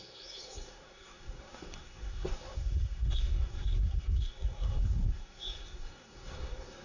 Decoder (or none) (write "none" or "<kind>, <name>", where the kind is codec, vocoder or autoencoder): codec, SNAC